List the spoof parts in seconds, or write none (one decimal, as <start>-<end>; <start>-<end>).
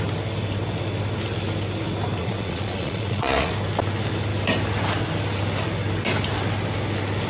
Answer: 2.2-3.5